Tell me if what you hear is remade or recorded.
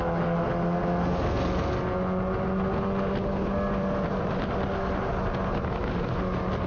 recorded